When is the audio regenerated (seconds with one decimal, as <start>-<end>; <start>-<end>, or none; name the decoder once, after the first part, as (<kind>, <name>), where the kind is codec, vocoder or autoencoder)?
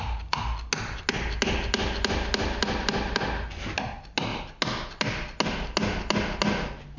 none